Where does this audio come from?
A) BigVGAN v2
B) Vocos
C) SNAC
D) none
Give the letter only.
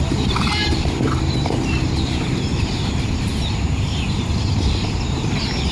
A